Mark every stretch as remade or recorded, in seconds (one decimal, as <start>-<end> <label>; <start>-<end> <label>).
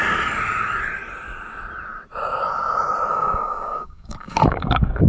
0.0-3.1 recorded; 3.1-5.1 remade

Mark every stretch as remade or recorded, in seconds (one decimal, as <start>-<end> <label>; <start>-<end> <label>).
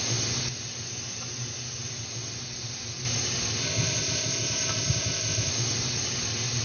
0.0-3.6 recorded; 3.6-5.5 remade; 5.5-6.6 recorded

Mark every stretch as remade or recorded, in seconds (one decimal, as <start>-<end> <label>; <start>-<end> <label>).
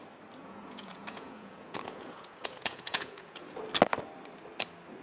0.0-0.4 recorded; 0.4-3.4 remade; 3.4-5.0 recorded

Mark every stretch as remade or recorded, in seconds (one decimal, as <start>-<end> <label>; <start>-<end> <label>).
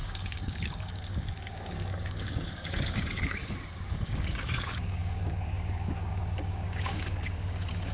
0.0-7.9 remade